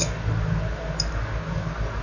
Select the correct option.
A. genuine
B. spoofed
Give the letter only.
A